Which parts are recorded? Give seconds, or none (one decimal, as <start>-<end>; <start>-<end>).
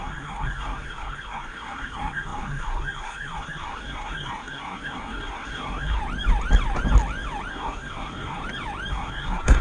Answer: 6.0-7.5; 8.4-8.9